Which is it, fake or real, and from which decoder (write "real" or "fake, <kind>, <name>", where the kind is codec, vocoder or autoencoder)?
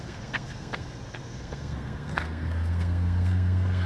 fake, codec, SNAC